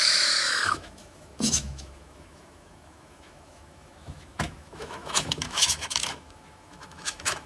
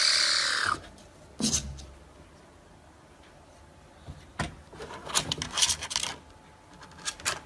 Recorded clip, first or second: second